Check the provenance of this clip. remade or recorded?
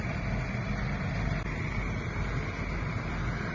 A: recorded